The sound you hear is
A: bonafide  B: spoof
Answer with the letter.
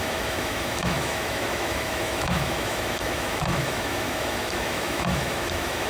B